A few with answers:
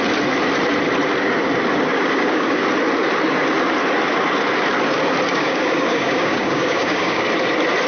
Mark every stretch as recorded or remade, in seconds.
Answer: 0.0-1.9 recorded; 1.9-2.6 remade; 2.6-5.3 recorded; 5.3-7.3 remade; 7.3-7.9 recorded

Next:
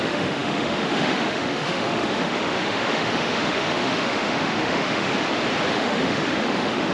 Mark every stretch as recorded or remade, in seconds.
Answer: 0.0-5.1 remade; 5.1-5.7 recorded; 5.7-6.9 remade

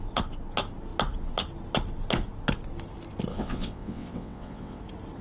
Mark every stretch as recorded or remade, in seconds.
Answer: 0.0-3.3 recorded; 3.3-4.8 remade; 4.8-5.2 recorded